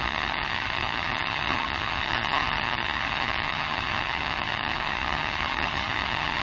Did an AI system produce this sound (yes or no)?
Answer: yes